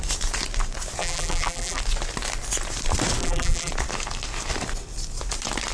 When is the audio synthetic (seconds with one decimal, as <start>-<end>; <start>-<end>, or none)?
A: 1.0-1.8; 3.2-3.7